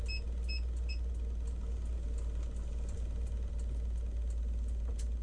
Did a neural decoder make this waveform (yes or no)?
no